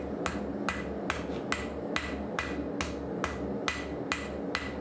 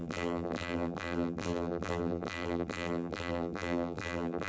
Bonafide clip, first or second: first